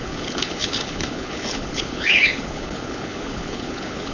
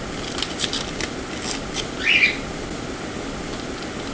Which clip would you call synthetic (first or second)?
first